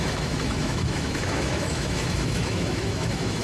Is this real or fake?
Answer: fake